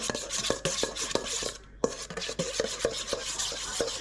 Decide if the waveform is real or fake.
real